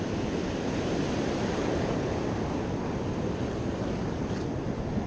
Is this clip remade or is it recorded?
recorded